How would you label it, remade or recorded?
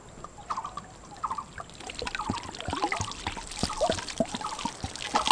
recorded